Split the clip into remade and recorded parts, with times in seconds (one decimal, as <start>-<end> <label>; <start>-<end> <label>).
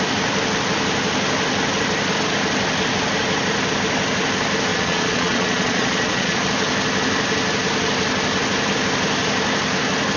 0.0-4.7 recorded; 4.7-6.4 remade; 6.4-10.2 recorded